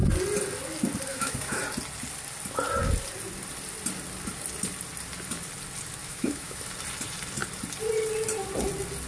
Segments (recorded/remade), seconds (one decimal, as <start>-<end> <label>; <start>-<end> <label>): 0.0-1.1 recorded; 1.1-1.6 remade; 1.6-6.0 recorded; 6.0-6.6 remade; 6.6-9.1 recorded